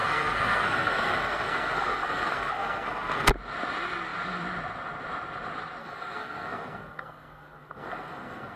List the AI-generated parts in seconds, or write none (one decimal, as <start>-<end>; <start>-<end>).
0.0-3.3; 5.8-8.6